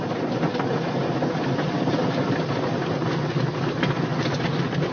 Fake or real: real